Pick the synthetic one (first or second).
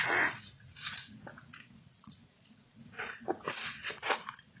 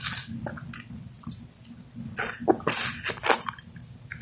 first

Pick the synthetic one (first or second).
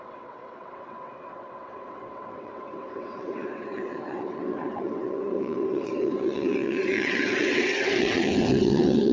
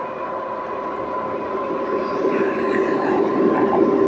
first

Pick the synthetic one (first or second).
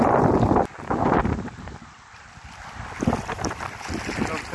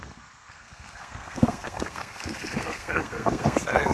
second